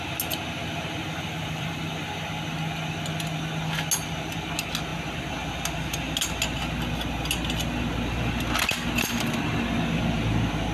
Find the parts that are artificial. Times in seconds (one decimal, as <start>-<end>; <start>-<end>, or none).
1.1-1.7